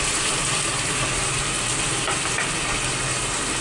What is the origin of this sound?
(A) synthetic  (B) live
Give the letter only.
B